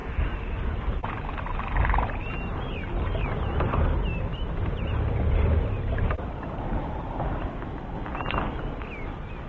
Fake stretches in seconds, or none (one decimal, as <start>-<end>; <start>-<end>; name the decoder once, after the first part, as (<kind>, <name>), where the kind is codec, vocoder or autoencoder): none